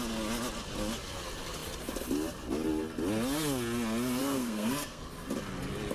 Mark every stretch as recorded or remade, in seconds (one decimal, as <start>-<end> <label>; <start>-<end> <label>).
0.0-4.2 recorded; 4.2-5.0 remade; 5.0-5.9 recorded